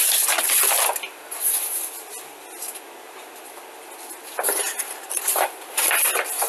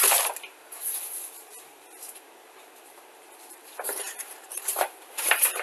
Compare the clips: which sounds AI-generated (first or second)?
second